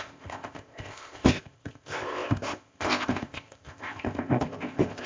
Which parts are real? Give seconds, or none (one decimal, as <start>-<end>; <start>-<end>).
none